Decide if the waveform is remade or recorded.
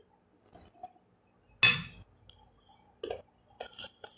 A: recorded